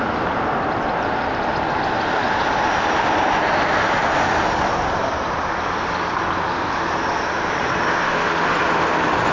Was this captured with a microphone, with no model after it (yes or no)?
yes